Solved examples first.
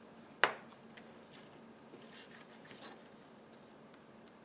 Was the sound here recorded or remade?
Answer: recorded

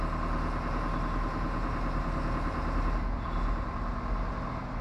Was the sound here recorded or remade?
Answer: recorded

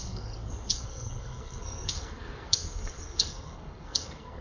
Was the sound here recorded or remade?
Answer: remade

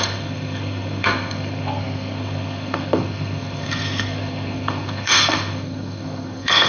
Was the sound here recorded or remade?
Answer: remade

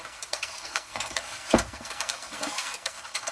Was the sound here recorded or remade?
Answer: remade